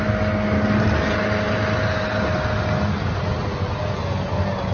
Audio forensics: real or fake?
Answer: real